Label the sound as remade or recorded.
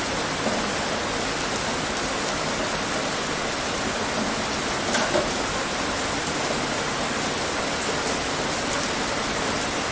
recorded